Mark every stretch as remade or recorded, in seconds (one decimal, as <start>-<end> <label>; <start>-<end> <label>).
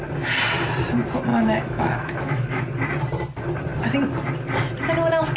0.0-1.3 recorded; 1.3-2.6 remade; 2.6-5.4 recorded